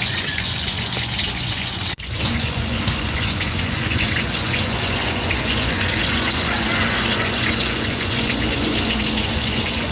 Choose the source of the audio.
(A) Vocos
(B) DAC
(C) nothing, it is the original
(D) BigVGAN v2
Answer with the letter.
A